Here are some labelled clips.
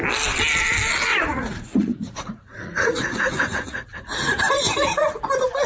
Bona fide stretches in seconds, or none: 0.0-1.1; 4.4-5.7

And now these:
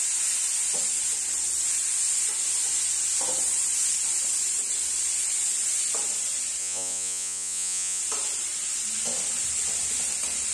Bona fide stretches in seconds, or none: 0.0-6.6; 8.0-10.5

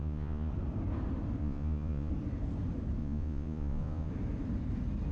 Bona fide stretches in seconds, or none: 0.5-1.4; 2.1-3.0; 4.1-5.1